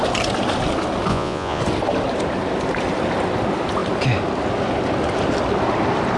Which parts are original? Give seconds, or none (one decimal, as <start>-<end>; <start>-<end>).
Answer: 0.0-1.1; 1.6-6.2